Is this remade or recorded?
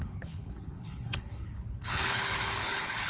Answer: remade